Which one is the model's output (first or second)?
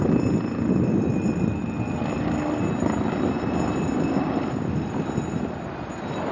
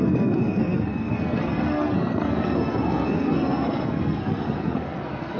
second